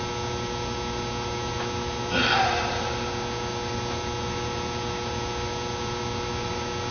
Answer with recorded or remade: recorded